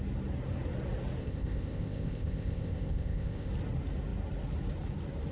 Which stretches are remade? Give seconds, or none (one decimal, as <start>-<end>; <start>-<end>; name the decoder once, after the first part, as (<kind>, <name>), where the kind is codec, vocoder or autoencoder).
1.2-3.5 (codec, ZipCodec)